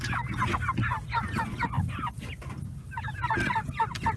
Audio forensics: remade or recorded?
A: recorded